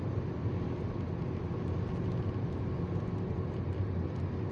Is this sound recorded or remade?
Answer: recorded